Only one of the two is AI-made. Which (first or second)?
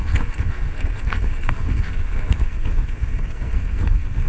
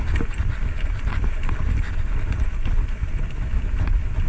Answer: first